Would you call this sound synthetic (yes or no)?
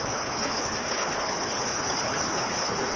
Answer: yes